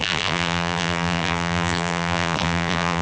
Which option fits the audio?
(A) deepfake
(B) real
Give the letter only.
A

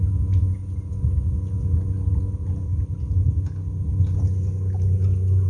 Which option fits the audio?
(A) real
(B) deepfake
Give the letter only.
A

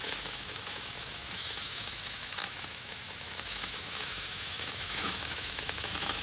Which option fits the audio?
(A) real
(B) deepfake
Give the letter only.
B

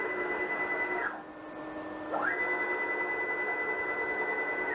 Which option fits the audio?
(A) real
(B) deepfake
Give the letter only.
A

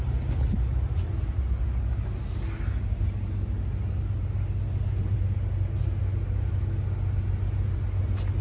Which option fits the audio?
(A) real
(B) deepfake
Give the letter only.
A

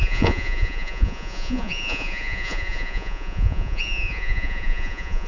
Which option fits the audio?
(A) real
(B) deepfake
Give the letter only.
B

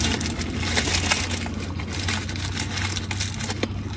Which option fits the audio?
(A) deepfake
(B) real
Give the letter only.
B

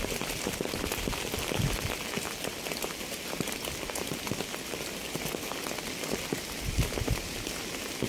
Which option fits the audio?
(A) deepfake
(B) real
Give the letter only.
B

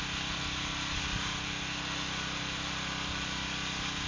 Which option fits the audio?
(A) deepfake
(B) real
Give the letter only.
B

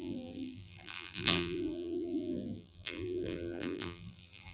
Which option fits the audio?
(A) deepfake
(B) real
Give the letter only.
A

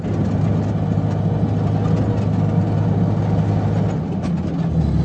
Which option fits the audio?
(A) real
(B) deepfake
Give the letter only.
A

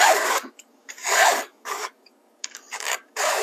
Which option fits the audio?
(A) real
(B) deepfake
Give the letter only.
B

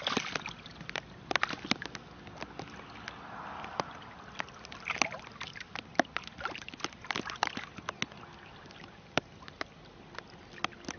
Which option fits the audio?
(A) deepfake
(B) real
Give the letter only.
B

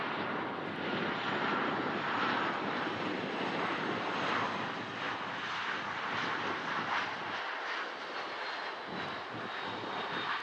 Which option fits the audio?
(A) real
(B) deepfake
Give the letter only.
A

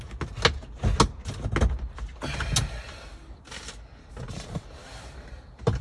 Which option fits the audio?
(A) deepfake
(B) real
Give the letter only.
B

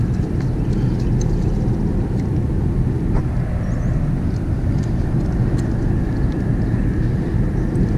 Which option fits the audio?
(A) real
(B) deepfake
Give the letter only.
A